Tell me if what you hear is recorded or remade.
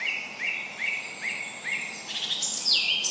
recorded